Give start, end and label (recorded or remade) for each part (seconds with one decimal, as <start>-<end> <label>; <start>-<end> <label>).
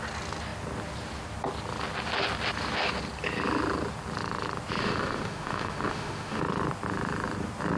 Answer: 0.0-4.8 recorded; 4.8-6.4 remade; 6.4-7.8 recorded